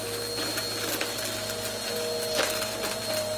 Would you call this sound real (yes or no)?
yes